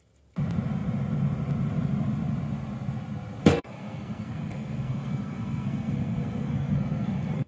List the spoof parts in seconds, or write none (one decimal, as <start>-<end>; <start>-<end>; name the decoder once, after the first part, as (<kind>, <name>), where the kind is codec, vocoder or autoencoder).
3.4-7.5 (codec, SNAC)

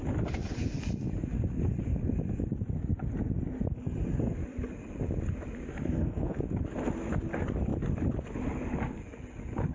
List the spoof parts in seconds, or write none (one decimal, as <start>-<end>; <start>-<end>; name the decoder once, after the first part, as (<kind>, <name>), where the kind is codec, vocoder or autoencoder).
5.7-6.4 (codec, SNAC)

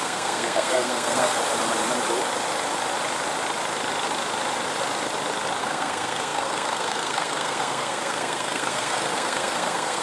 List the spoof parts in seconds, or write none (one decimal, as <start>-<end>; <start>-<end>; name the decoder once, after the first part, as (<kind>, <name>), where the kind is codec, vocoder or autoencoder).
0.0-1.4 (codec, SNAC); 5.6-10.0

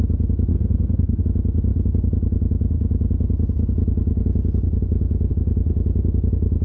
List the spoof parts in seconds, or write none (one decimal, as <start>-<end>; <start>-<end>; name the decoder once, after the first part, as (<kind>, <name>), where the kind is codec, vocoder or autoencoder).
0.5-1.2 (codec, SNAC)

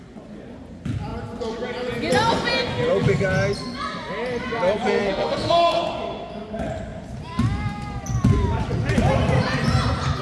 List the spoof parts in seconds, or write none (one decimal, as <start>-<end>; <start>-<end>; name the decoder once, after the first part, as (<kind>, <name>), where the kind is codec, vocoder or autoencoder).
5.0-5.8 (codec, SNAC)

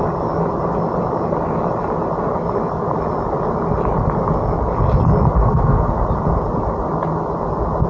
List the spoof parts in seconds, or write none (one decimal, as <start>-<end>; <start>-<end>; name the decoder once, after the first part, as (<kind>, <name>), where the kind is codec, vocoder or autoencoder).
5.4-5.9 (codec, SNAC)

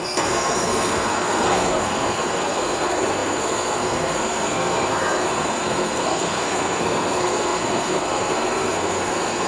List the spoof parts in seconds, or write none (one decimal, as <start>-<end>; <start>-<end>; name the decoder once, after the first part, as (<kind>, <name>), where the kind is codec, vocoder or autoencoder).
0.0-9.5 (codec, SNAC)